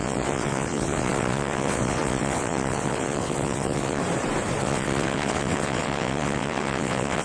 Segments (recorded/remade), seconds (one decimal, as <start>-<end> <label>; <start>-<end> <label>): 0.0-4.0 remade; 4.0-4.6 recorded; 4.6-7.2 remade

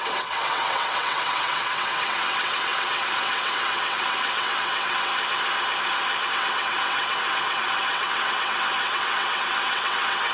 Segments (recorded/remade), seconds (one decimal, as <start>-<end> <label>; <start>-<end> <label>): 0.0-5.1 remade; 5.1-6.3 recorded; 6.3-10.3 remade